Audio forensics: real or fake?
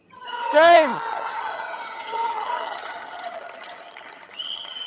fake